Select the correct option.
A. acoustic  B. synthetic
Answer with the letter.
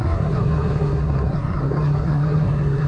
B